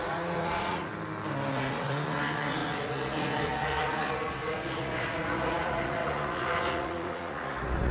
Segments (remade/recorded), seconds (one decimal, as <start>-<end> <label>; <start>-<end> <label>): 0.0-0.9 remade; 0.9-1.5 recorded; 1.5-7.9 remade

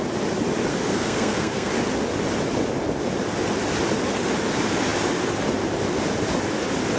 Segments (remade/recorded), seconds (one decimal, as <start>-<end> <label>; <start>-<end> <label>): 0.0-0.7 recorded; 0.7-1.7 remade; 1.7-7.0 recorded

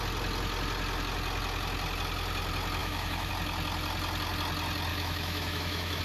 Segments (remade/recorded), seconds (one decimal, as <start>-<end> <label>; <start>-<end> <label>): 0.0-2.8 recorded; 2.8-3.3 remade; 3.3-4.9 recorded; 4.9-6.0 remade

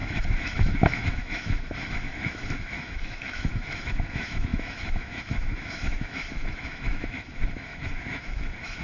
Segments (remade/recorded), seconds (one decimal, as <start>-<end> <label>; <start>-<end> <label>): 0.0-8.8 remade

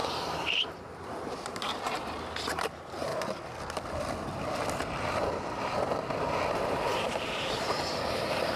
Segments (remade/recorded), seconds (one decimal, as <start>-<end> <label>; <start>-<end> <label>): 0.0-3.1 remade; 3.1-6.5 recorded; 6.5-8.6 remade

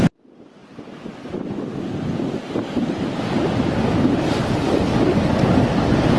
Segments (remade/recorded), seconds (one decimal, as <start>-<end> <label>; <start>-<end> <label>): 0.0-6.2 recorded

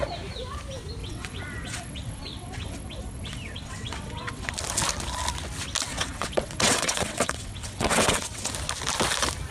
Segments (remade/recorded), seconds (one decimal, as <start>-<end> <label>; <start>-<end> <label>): 0.0-1.0 recorded; 1.0-4.5 remade; 4.5-5.9 recorded; 5.9-8.5 remade; 8.5-9.5 recorded